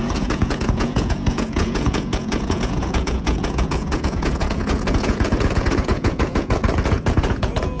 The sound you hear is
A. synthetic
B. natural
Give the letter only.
A